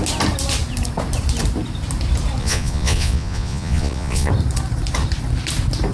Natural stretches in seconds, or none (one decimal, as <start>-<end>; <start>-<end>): 0.0-2.4; 4.3-5.9